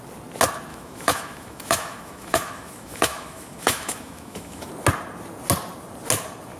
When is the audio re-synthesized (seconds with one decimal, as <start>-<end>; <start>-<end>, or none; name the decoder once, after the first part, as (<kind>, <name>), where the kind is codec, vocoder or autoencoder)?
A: 0.7-4.7 (autoencoder, DAC-VAE)